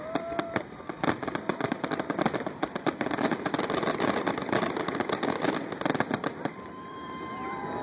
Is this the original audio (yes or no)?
no